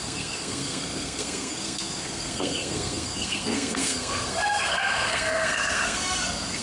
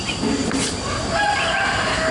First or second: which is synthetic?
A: first